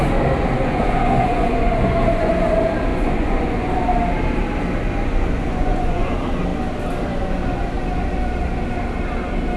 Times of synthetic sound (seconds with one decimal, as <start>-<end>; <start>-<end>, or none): 0.6-2.3; 2.9-3.7; 5.0-6.1